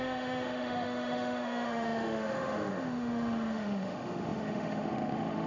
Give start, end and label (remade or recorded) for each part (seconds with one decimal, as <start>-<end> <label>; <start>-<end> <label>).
0.0-5.5 remade